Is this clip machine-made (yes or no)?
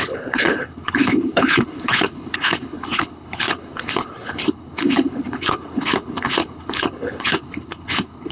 yes